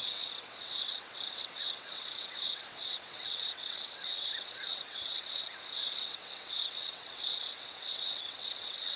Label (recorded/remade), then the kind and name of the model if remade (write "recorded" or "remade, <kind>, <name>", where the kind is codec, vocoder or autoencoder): remade, vocoder, WaveNeXt